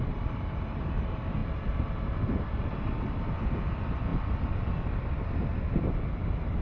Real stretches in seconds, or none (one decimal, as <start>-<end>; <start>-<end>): 0.0-6.6